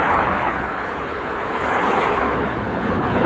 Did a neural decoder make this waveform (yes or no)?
yes